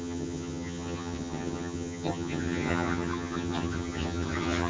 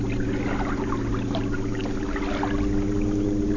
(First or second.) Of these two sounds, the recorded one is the second